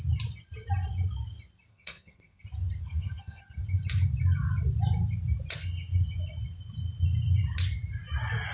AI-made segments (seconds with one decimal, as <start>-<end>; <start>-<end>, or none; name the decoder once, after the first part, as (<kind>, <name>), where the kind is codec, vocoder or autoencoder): 1.7-2.4 (codec, SNAC); 2.8-3.4